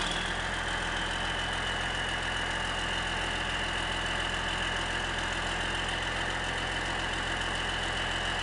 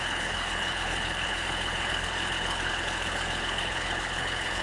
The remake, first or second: second